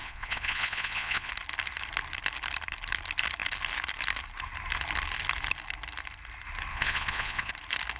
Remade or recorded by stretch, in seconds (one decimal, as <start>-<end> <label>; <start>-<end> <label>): 0.0-1.3 remade; 1.3-6.7 recorded; 6.7-7.5 remade; 7.5-8.0 recorded